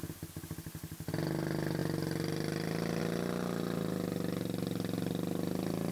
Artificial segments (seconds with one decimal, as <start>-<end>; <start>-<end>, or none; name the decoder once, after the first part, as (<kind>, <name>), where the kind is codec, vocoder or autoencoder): none